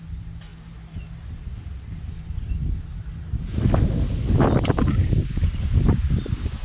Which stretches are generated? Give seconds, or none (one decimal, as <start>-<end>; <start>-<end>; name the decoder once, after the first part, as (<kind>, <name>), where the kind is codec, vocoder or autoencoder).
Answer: none